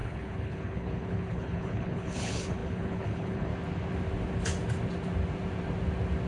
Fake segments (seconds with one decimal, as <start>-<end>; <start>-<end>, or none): 0.0-3.5

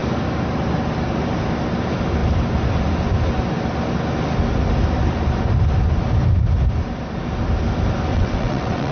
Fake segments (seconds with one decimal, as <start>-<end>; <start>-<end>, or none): 8.1-8.9